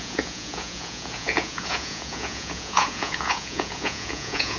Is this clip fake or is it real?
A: fake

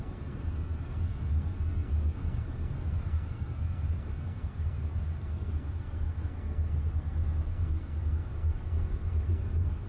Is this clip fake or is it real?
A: fake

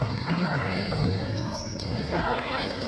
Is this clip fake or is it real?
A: fake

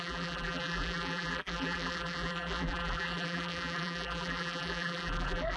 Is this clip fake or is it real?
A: fake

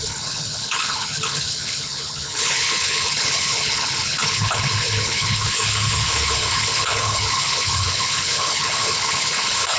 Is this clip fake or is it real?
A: fake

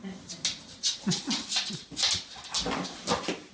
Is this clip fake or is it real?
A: real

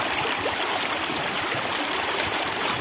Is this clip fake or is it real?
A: real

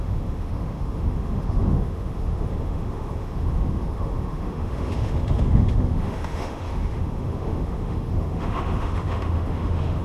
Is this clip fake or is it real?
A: fake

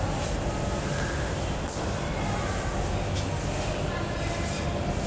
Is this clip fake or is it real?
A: real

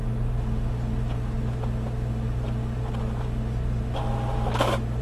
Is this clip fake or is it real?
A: real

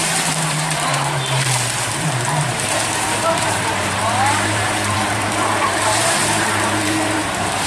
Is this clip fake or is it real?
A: fake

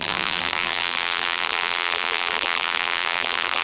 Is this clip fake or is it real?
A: fake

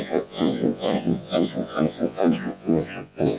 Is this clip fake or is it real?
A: fake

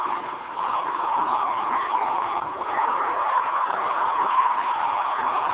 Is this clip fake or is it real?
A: fake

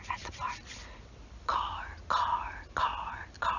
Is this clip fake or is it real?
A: real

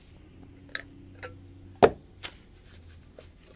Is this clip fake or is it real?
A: real